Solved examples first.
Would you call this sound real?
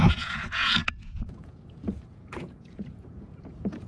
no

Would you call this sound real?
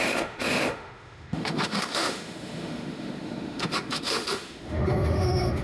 no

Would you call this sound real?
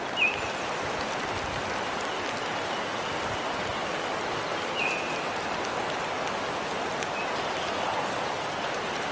yes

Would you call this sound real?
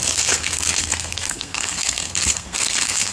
no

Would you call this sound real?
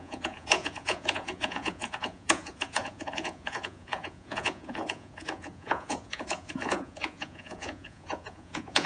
no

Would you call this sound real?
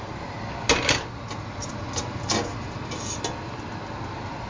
yes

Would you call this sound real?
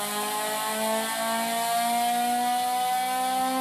yes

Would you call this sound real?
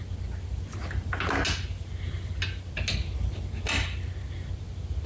yes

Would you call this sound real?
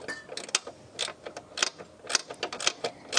yes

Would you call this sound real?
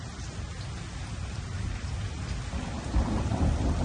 yes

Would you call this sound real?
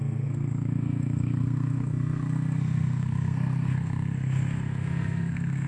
no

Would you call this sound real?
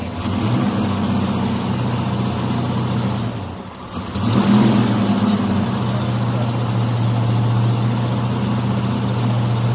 yes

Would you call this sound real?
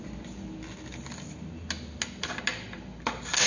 yes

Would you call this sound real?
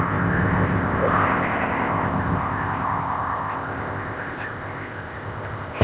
no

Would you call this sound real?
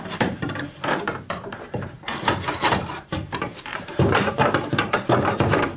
no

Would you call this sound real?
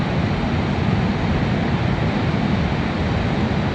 yes